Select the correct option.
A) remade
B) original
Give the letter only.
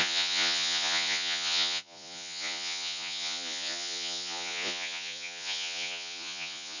A